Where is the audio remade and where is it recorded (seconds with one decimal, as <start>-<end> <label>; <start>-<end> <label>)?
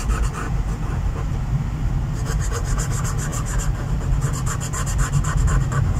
0.0-6.0 recorded